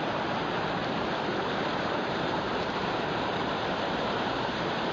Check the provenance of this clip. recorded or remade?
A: remade